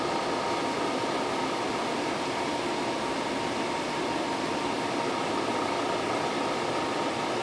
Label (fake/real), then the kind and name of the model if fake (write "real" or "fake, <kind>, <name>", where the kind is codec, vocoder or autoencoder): real